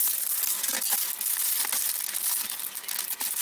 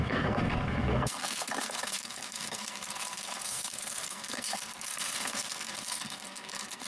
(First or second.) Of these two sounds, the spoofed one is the second